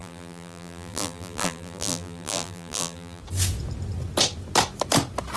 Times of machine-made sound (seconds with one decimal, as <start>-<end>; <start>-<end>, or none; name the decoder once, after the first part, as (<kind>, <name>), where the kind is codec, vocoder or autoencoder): 0.0-3.2 (vocoder, BigVGAN v2)